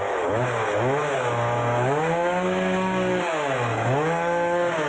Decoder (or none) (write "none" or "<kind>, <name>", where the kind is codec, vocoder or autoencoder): codec, DAC